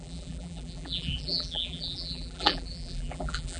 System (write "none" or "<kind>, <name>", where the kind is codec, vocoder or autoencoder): vocoder, BigVGAN v2